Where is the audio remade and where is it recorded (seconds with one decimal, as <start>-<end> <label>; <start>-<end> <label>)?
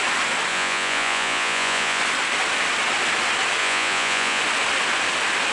0.0-0.5 recorded; 0.5-2.0 remade; 2.0-3.6 recorded; 3.6-4.4 remade; 4.4-5.5 recorded